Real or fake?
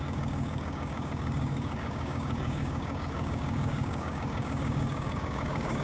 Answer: fake